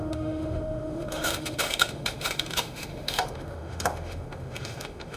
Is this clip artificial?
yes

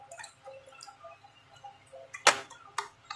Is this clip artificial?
no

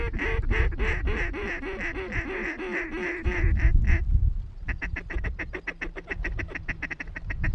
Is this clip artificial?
no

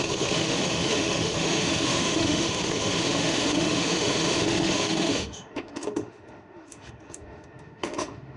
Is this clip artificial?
yes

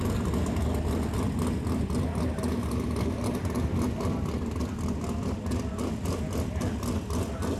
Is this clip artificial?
no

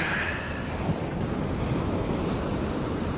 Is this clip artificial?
no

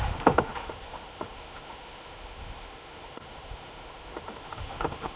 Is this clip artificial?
yes